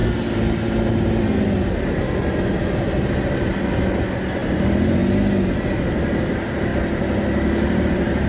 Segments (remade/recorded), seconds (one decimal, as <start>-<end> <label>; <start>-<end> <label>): 0.0-8.3 recorded